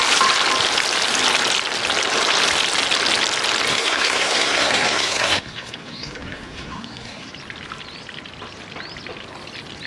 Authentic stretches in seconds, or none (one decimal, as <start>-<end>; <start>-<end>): 0.0-3.7; 7.3-9.9